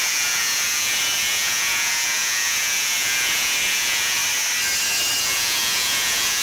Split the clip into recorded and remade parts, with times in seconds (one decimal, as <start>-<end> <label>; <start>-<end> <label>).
0.0-4.2 remade; 4.2-5.2 recorded; 5.2-6.4 remade